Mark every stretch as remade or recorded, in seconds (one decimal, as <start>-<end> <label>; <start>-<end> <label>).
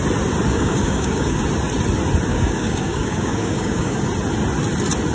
0.0-0.5 recorded; 0.5-1.4 remade; 1.4-2.3 recorded; 2.3-4.0 remade; 4.0-5.1 recorded